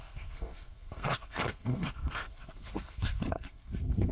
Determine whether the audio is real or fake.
fake